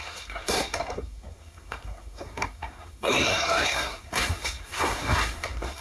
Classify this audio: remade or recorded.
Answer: remade